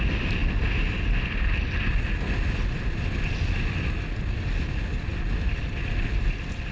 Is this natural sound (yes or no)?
yes